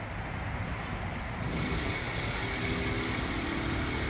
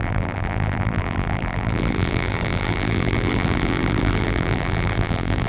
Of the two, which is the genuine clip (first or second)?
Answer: first